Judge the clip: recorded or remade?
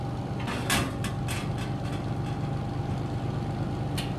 recorded